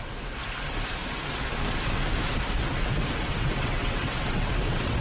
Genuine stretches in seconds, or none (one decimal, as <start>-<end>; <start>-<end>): 0.4-3.4